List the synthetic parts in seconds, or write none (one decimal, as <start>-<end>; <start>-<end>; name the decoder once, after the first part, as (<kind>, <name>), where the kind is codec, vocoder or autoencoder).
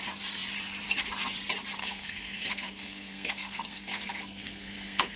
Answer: 1.8-5.2 (codec, SNAC)